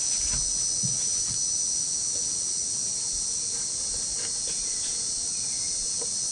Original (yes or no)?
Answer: no